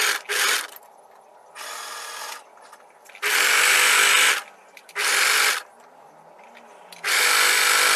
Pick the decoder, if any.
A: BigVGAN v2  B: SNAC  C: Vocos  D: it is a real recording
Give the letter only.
D